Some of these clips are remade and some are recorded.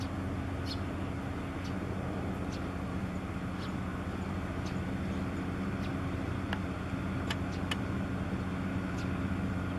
recorded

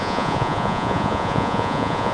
remade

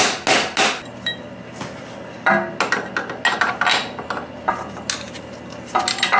recorded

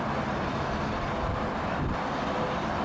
recorded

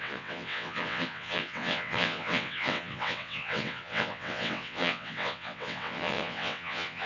remade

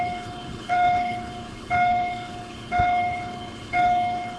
remade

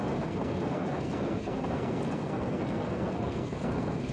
remade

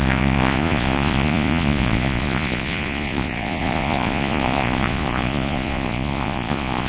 remade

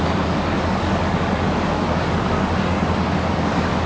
remade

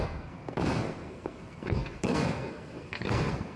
remade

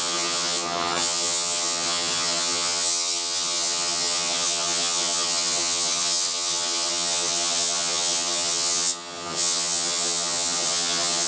remade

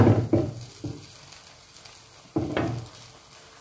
recorded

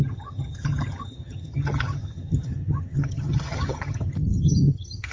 remade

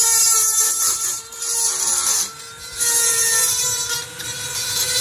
remade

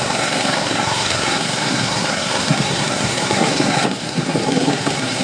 remade